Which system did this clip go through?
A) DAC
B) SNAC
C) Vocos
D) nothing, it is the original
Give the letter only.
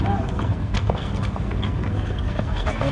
B